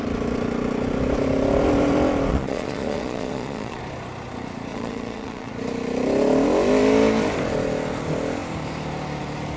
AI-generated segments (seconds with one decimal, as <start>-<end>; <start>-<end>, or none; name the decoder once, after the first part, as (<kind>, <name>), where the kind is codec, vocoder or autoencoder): 2.3-3.8 (vocoder, Vocos); 4.7-5.5